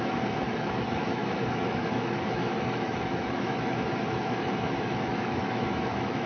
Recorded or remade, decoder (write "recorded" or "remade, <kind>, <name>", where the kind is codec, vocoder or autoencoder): remade, autoencoder, DAC-VAE